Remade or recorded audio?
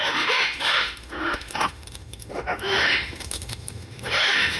remade